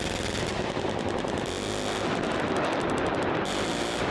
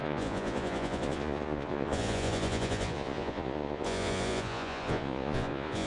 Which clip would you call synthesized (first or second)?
second